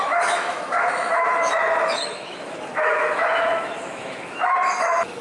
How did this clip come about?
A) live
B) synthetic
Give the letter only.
B